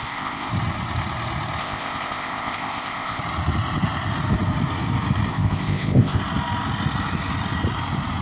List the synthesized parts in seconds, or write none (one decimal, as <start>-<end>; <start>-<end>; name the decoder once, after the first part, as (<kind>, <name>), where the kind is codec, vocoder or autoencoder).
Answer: 0.0-0.5 (codec, ZipCodec); 1.6-3.2; 5.3-6.2